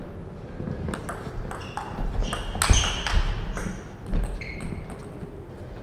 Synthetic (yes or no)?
no